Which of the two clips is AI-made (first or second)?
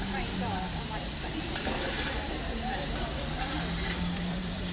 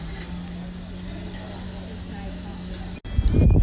first